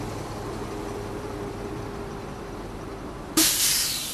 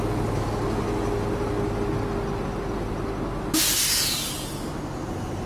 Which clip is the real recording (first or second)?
second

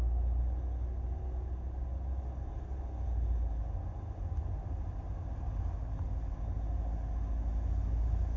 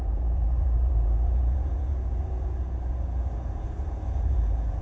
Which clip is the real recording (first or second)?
first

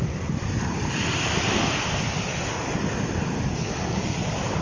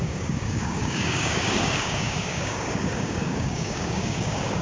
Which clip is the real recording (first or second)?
first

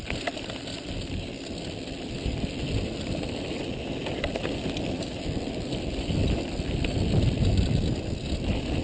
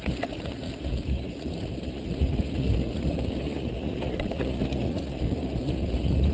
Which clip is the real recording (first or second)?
first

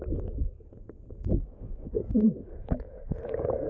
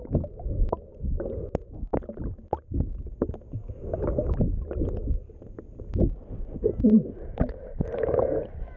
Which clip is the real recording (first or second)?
second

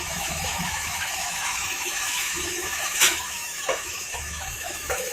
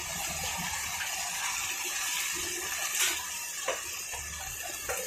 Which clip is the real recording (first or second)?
second